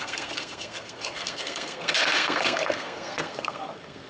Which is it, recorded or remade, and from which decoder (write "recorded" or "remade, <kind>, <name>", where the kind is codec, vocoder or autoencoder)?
remade, codec, SNAC